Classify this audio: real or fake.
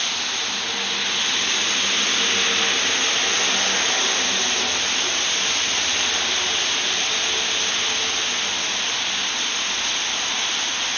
real